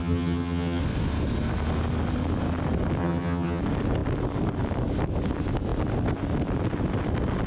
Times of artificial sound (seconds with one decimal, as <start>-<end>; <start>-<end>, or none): 0.0-0.8; 3.0-3.6

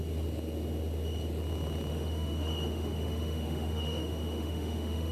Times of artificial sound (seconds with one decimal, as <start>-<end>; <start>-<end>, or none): 1.9-5.1

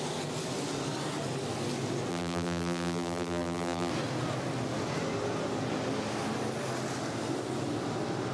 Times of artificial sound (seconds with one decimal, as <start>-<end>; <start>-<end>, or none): 2.1-3.9

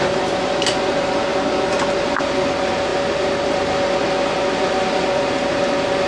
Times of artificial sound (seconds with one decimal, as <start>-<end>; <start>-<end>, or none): none

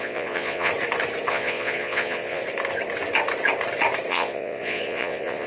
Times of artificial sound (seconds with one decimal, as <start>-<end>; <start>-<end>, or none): 0.0-0.7; 1.3-2.4; 4.1-5.5

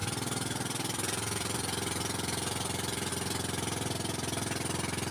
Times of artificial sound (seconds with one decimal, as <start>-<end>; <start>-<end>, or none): 0.0-3.1

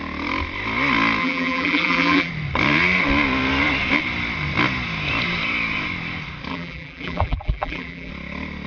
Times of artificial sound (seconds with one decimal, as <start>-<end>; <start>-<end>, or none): 1.2-2.3; 6.5-8.1

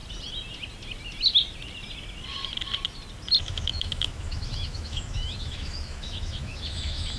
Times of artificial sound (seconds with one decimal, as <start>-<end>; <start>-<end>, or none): 3.4-7.2